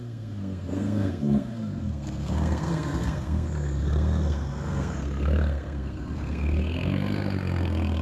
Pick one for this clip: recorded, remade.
remade